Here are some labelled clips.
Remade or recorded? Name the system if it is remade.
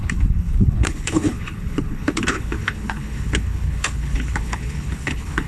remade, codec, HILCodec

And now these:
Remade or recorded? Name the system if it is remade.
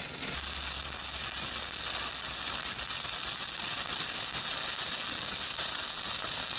recorded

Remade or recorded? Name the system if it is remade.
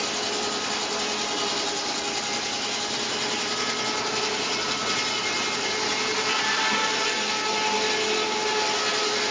recorded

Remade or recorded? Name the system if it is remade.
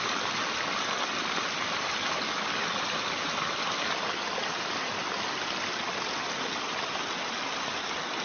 recorded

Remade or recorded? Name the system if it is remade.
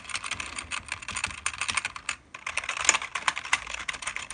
recorded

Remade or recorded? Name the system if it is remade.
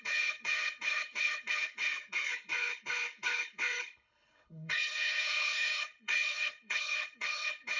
remade, codec, HILCodec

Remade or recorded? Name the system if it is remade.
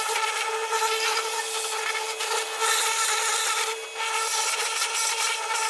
recorded